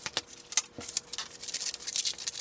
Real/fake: real